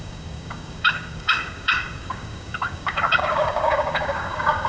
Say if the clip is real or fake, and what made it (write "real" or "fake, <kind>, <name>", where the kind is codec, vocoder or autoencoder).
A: fake, codec, DAC